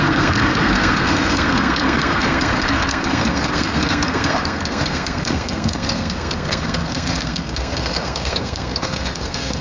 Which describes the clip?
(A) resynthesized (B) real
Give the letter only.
A